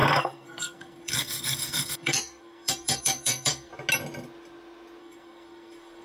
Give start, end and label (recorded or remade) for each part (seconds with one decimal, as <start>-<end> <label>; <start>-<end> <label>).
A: 0.0-3.7 remade; 3.7-5.0 recorded; 5.0-6.0 remade